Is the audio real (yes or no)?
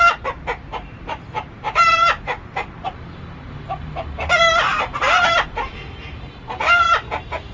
no